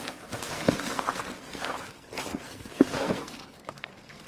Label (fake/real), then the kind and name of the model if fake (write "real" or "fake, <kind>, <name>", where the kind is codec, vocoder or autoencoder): fake, codec, SNAC